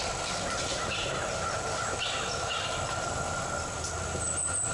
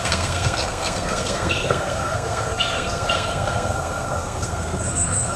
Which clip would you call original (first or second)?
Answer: first